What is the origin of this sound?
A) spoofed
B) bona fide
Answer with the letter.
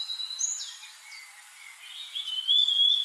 B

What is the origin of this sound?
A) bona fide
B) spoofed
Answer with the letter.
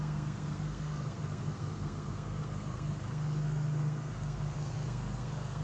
B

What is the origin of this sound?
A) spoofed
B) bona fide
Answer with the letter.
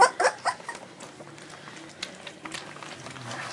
B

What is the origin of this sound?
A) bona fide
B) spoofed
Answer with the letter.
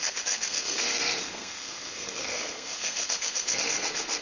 B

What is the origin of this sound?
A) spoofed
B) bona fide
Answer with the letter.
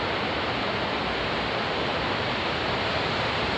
B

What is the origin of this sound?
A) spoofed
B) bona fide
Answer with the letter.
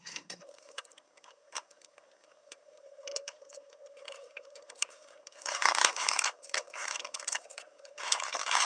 A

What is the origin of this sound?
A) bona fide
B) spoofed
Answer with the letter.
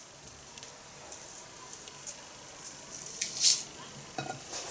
A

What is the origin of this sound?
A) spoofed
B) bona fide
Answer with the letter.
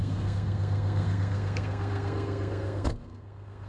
A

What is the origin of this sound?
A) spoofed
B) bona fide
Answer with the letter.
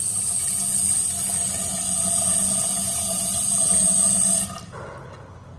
B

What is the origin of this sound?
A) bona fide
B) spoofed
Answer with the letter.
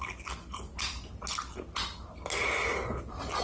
A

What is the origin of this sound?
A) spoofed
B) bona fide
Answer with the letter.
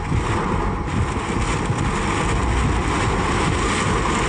B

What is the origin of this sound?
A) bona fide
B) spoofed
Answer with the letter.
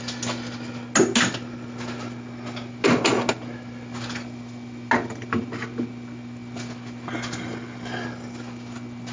A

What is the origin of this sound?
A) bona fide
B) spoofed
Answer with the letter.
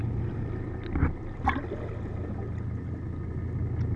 A